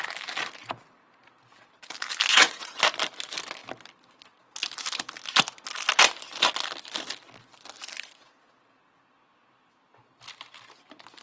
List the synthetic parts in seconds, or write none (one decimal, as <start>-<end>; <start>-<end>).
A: 2.3-2.8